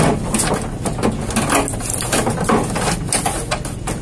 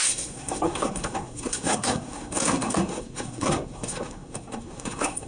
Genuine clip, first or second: first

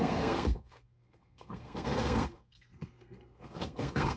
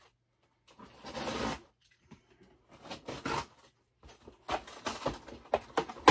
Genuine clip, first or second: second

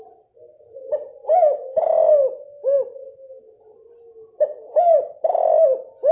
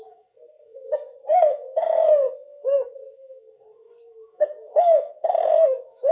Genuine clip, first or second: first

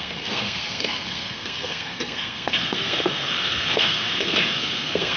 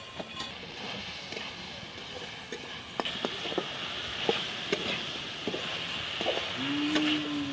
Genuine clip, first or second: second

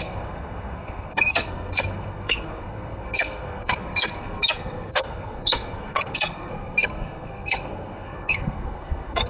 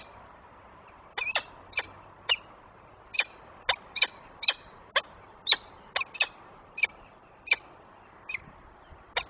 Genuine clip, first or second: second